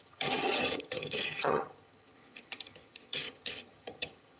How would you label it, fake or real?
fake